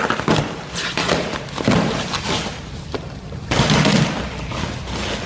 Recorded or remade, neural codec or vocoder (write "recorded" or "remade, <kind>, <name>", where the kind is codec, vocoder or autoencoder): recorded